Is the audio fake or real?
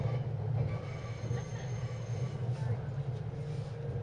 real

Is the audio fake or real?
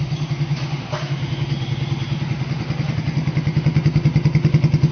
real